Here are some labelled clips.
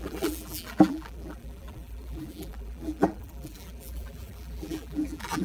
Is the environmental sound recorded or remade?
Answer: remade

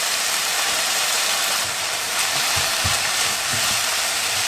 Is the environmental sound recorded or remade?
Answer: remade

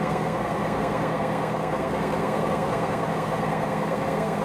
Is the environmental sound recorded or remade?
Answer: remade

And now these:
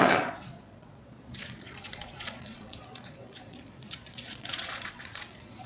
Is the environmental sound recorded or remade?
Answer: remade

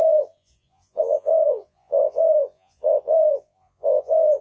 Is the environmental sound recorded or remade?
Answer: remade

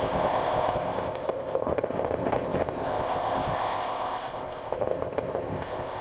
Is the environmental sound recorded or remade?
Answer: remade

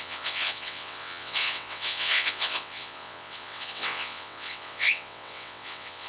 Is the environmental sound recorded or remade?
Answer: remade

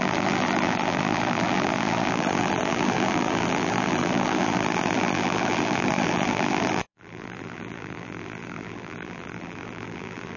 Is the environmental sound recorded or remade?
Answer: remade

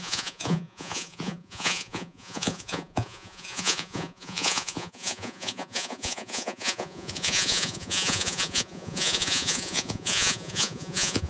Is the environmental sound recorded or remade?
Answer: remade